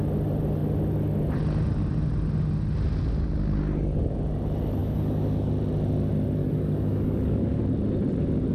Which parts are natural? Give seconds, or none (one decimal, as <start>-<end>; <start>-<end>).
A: 0.0-4.8; 5.5-6.4; 7.6-8.5